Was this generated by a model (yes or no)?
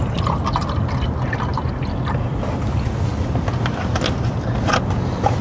no